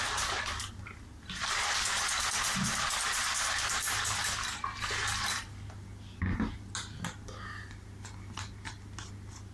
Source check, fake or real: real